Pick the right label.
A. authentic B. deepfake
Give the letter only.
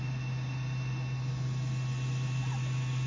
A